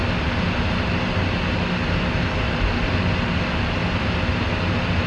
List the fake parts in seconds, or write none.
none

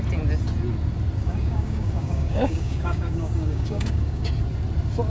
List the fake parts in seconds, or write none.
1.2-4.3 (codec, DAC)

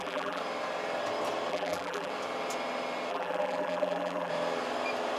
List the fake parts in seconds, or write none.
0.0-0.4 (vocoder, BigVGAN v2); 1.5-2.1; 3.1-4.3

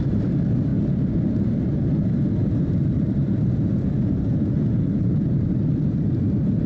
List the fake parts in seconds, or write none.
0.0-0.7 (vocoder, BigVGAN v2); 3.1-6.7

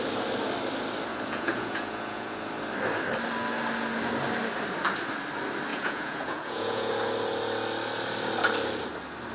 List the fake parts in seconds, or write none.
1.1-2.5 (vocoder, Vocos); 5.7-6.9